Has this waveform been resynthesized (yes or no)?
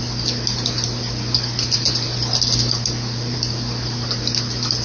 no